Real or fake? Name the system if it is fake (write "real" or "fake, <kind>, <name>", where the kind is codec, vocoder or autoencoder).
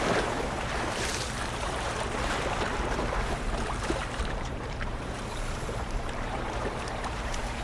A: fake, vocoder, BigVGAN v2